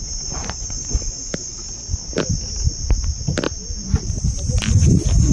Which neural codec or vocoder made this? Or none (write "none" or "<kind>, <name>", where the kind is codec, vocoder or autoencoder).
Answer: none